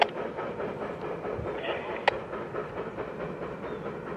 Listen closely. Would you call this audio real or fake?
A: real